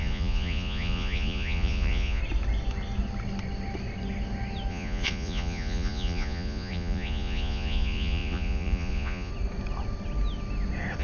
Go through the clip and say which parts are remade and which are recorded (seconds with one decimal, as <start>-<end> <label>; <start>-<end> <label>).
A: 0.0-2.2 remade; 2.2-4.7 recorded; 4.7-9.3 remade; 9.3-11.0 recorded